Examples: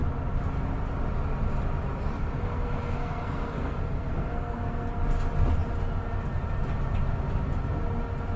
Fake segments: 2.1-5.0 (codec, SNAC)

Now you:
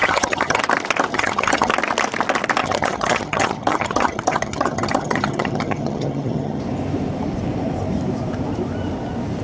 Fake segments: 0.0-0.6 (vocoder, HiFi-GAN); 1.1-1.7; 2.6-6.6

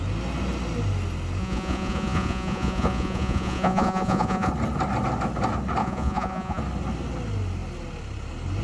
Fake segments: 1.4-4.5 (vocoder, Vocos); 5.8-6.6

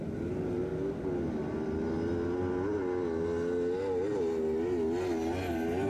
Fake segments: none

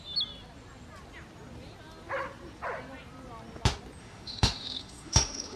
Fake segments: 4.0-5.6 (autoencoder, DAC-VAE)